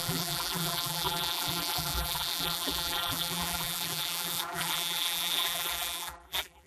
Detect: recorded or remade remade